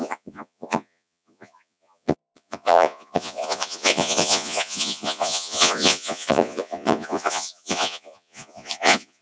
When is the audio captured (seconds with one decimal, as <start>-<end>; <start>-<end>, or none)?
none

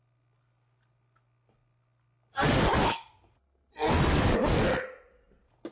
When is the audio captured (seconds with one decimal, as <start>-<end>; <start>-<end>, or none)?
0.0-5.7

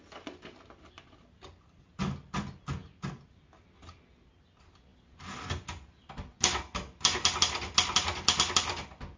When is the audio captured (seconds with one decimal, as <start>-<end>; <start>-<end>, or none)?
0.0-9.2

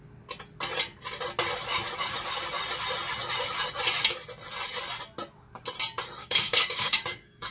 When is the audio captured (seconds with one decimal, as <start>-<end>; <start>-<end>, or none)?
0.0-6.2